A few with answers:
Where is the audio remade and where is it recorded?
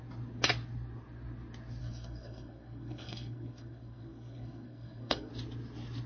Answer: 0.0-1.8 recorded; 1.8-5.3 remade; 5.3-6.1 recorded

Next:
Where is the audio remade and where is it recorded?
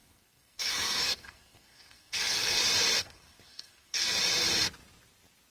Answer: 0.0-2.6 remade; 2.6-3.0 recorded; 3.0-4.2 remade; 4.2-5.5 recorded